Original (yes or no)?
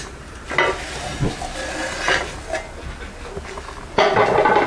yes